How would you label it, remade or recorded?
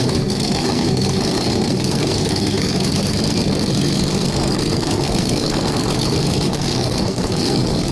remade